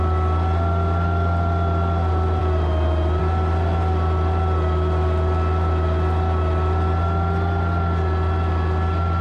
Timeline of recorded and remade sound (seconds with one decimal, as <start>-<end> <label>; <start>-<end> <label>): 0.0-9.2 recorded